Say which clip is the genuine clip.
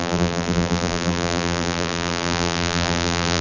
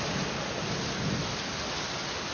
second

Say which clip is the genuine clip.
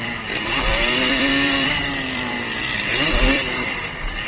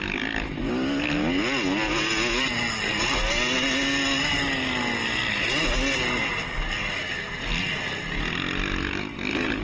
second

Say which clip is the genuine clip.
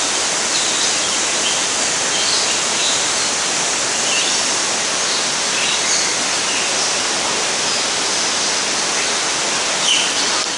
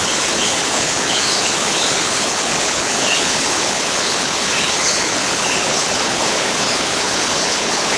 first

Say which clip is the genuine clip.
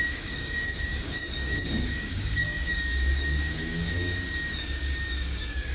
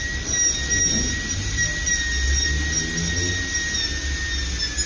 second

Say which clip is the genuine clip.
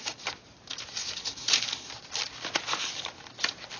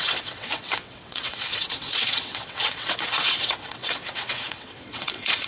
first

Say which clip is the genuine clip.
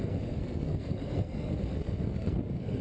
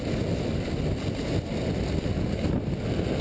second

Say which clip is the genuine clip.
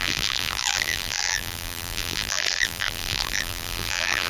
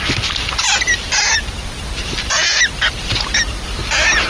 second